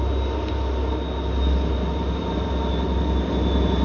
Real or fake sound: real